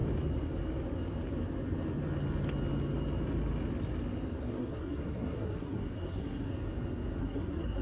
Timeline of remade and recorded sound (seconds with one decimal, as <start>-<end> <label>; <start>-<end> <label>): 0.0-4.4 recorded; 4.4-6.5 remade; 6.5-7.2 recorded; 7.2-7.8 remade